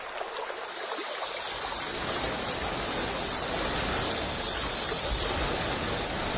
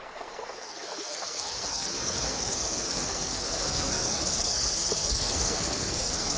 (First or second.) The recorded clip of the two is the first